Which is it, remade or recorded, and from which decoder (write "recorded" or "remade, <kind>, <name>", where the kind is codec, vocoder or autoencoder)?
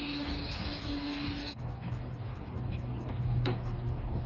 remade, codec, DAC